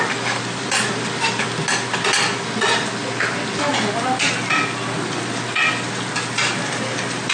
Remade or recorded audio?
recorded